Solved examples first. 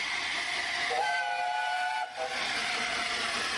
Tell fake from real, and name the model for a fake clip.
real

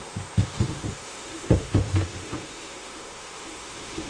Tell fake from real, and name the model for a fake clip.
fake, autoencoder, DAC-VAE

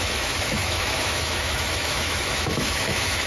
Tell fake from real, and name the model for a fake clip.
fake, autoencoder, DAC-VAE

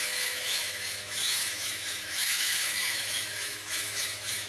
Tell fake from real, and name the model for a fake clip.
fake, autoencoder, DAC-VAE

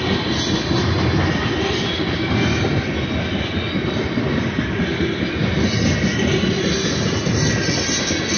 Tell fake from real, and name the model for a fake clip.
real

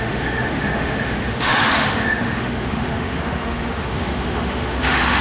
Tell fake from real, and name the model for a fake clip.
fake, autoencoder, DAC-VAE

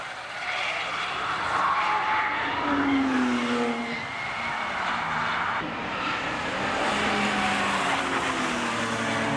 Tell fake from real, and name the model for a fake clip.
real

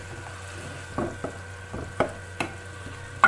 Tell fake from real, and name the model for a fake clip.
real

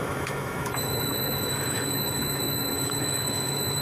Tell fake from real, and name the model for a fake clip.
fake, autoencoder, DAC-VAE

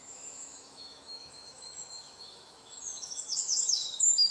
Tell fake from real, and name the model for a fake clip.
fake, autoencoder, DAC-VAE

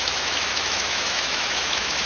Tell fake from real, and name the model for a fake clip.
fake, autoencoder, DAC-VAE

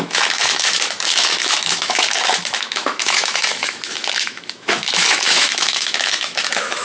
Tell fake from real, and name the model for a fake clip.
fake, autoencoder, DAC-VAE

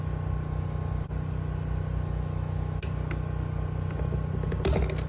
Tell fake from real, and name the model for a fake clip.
real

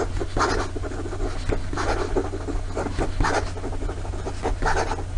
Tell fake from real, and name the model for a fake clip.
real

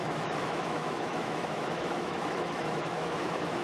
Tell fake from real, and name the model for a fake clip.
fake, autoencoder, DAC-VAE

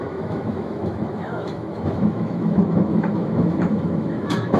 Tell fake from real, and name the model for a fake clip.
fake, autoencoder, DAC-VAE